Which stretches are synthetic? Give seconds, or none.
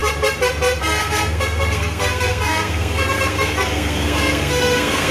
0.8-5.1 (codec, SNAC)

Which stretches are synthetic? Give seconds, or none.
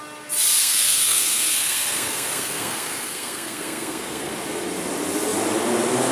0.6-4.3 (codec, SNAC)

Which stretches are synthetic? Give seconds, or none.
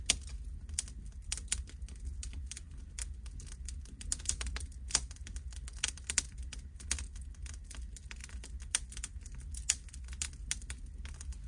none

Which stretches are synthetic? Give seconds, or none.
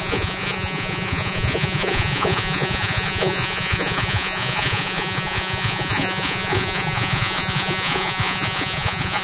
0.0-9.2 (vocoder, Vocos)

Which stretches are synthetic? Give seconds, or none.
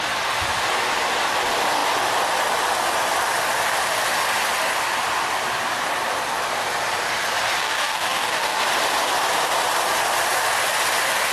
7.6-8.6 (codec, DAC)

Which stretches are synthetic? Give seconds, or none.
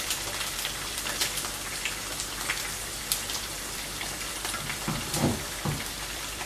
0.0-1.2 (vocoder, BigVGAN v2); 2.8-6.5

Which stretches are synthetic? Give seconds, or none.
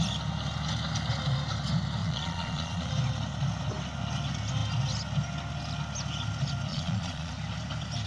2.0-2.9 (vocoder, Vocos); 6.7-7.3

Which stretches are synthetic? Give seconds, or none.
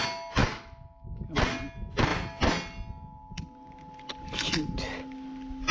0.4-1.2 (autoencoder, DAC-VAE)